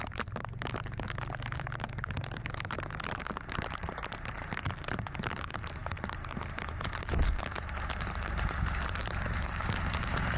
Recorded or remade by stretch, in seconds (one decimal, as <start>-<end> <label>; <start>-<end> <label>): 0.0-10.4 remade

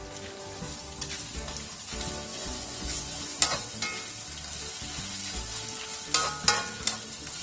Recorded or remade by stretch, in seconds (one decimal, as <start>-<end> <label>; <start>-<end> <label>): 0.0-2.3 recorded; 2.3-3.4 remade; 3.4-7.4 recorded